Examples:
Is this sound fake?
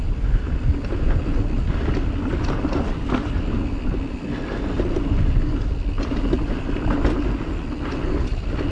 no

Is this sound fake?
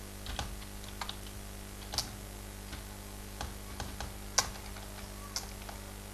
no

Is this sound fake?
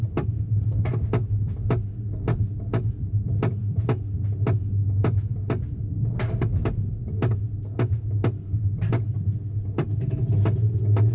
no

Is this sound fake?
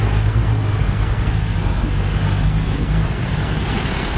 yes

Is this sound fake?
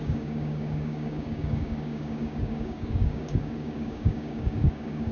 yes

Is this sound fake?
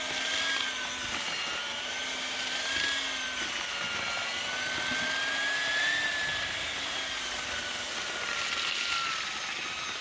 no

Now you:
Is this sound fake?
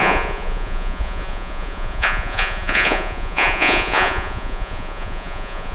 yes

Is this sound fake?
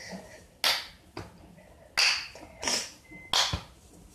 no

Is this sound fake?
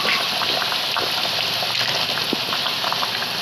no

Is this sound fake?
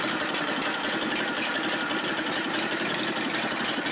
no